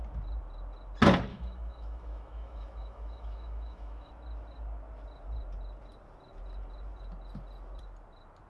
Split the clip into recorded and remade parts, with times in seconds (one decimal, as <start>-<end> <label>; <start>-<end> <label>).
0.0-1.3 recorded; 1.3-4.1 remade; 4.1-8.5 recorded